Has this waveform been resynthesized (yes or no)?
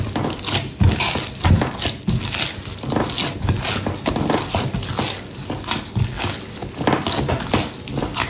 no